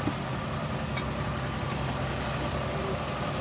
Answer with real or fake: real